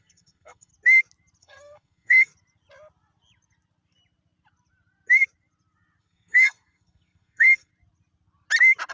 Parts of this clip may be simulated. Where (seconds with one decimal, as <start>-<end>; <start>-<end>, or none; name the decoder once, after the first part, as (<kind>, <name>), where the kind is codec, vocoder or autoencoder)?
0.0-0.7 (codec, SNAC); 1.4-2.3; 6.0-7.7